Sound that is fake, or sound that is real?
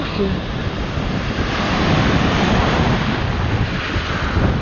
real